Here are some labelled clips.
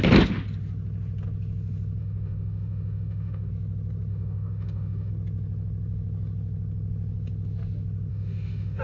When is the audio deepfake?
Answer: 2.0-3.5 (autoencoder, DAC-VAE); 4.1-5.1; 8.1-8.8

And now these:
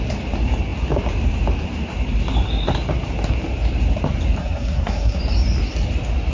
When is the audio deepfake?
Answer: 4.4-5.2 (codec, SNAC)

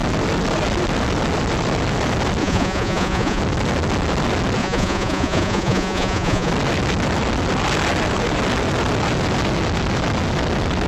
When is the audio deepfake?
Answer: 2.4-3.4 (vocoder, Vocos); 4.6-6.5

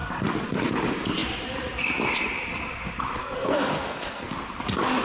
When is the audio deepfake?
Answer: 3.2-4.3 (codec, SNAC)

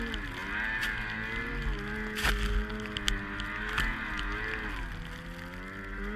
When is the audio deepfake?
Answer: none